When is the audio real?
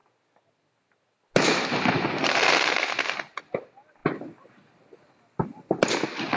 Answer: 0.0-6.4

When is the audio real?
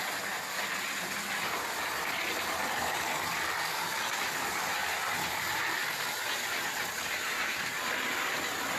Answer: 0.0-8.8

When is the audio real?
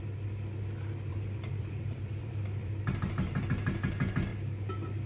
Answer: 0.0-1.1; 3.5-5.1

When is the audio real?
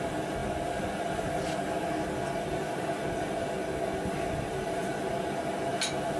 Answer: 0.0-6.2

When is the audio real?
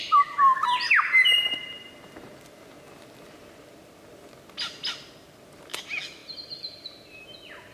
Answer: 0.0-6.2; 7.2-7.7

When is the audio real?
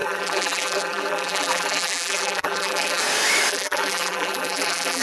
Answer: 3.0-3.5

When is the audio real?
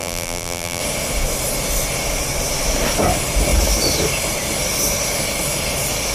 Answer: 0.8-6.1